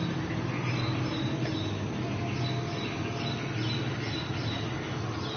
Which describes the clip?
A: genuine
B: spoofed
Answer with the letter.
A